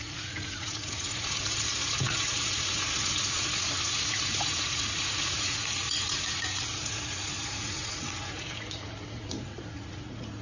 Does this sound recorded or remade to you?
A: remade